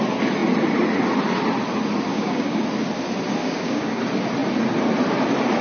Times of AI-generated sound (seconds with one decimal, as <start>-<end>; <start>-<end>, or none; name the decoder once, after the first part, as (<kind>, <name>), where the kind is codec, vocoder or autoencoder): 2.1-2.6 (codec, DAC); 3.4-4.0